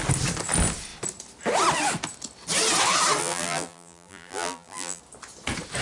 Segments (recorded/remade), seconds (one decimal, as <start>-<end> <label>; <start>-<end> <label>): 0.0-3.2 recorded; 3.2-5.0 remade; 5.0-5.8 recorded